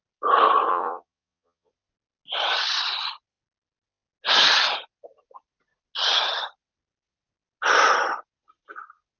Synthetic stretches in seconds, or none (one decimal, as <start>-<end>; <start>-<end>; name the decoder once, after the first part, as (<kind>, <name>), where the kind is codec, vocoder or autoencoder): 0.7-1.7 (vocoder, Vocos)